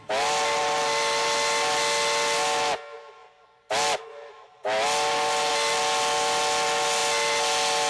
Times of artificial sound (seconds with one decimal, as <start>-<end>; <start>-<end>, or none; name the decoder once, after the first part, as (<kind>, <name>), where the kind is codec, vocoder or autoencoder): none